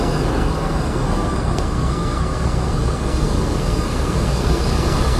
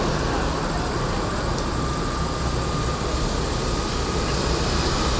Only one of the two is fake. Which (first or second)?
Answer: first